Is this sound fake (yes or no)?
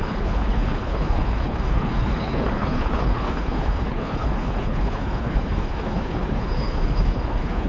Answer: yes